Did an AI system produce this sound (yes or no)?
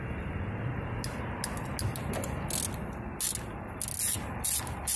no